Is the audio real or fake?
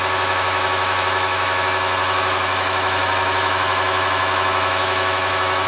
fake